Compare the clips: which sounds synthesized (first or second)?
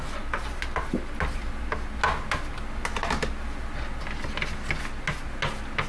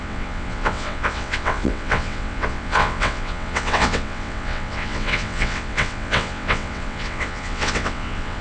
second